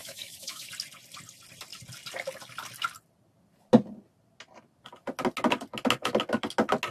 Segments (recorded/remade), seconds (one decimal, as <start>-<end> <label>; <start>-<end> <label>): 0.0-0.7 remade; 0.7-6.9 recorded